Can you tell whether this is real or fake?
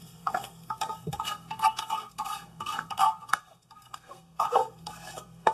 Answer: fake